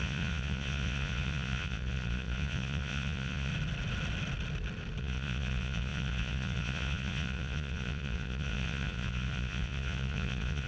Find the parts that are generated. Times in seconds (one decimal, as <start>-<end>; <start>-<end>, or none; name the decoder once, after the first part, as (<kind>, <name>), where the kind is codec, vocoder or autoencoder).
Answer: 0.0-3.5 (vocoder, Vocos); 5.0-10.7